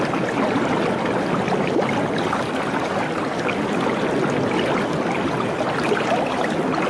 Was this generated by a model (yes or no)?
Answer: no